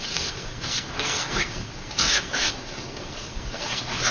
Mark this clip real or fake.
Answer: fake